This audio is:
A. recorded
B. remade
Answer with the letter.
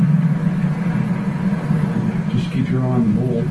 A